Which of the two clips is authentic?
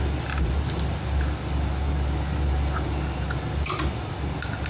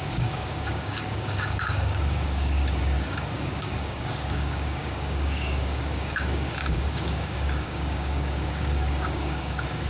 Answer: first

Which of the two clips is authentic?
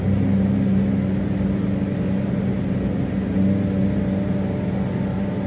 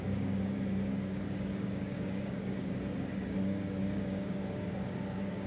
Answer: first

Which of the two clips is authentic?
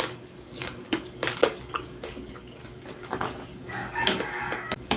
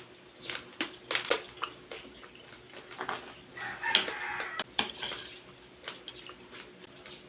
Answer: second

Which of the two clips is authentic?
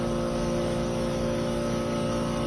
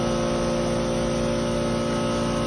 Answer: second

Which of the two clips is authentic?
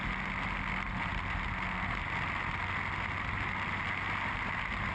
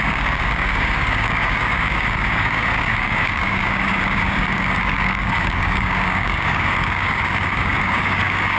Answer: first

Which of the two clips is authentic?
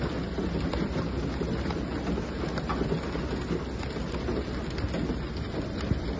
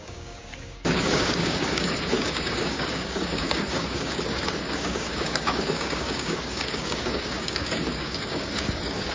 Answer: first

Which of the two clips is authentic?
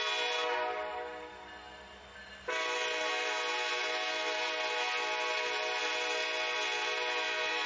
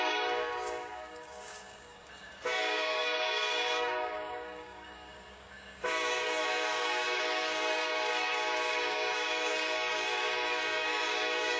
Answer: first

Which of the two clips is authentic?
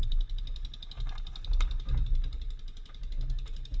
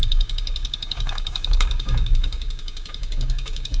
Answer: first